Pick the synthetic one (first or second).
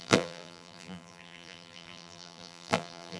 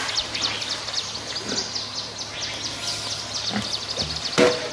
first